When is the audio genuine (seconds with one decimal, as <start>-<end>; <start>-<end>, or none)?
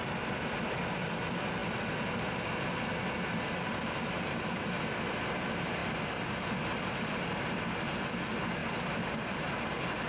0.0-10.1